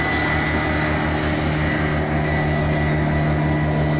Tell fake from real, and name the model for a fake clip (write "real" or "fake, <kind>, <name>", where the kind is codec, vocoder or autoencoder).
real